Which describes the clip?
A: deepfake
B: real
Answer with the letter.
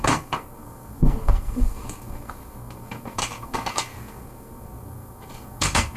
A